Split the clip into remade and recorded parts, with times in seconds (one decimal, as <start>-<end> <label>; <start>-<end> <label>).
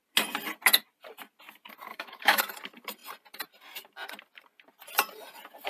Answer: 0.0-1.9 recorded; 1.9-2.4 remade; 2.4-5.7 recorded